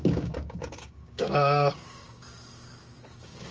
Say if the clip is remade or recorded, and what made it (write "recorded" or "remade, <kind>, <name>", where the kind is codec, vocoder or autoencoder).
remade, codec, DAC